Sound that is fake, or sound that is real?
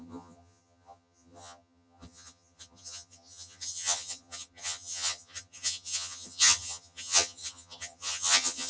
fake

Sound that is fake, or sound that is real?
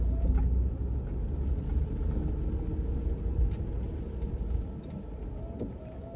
real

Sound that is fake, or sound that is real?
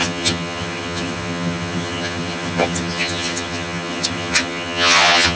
fake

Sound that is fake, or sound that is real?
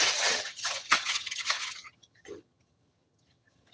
fake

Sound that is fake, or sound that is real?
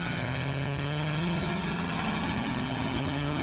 fake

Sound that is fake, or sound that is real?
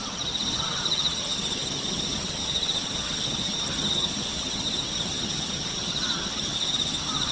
fake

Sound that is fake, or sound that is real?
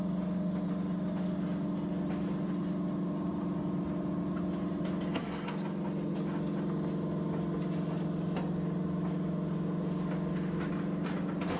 real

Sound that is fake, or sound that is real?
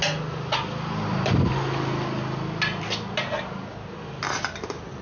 real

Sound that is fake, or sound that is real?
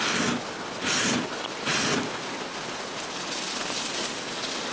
real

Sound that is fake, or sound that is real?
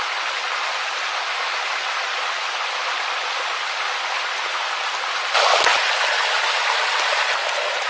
real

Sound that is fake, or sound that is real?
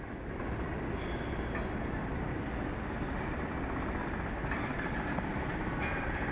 real